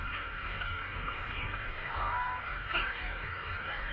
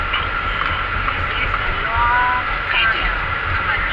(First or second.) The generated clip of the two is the first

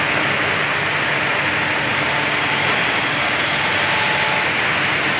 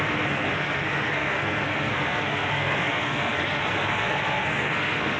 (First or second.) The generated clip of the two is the second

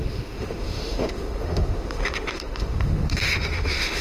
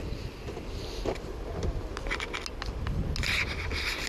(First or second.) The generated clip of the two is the first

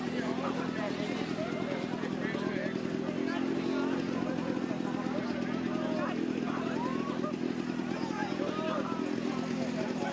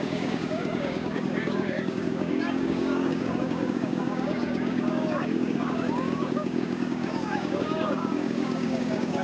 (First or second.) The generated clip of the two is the second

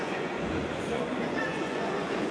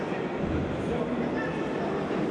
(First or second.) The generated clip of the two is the first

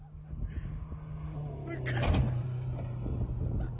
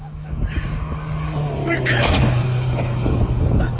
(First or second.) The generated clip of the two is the second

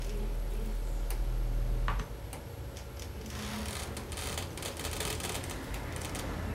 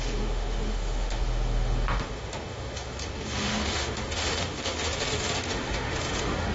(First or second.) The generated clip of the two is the second